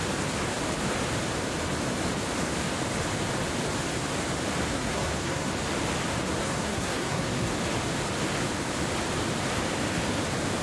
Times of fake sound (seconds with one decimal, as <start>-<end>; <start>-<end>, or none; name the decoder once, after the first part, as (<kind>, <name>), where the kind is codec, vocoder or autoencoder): 4.7-5.5 (codec, SNAC); 6.4-7.5